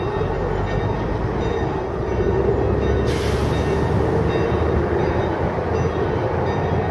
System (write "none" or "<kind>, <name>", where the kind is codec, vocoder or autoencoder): none